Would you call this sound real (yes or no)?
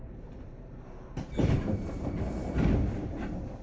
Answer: no